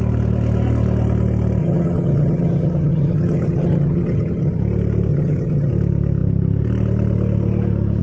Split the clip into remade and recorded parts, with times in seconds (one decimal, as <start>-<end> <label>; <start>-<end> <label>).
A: 0.0-1.6 recorded; 1.6-4.6 remade; 4.6-5.1 recorded; 5.1-5.7 remade; 5.7-8.0 recorded